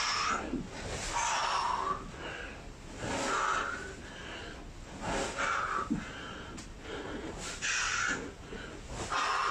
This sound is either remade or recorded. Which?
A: recorded